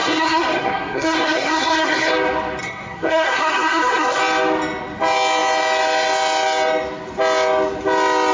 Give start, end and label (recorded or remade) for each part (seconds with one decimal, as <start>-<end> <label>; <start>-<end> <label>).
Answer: 0.0-2.1 remade; 2.1-2.6 recorded; 2.6-4.2 remade; 4.2-8.3 recorded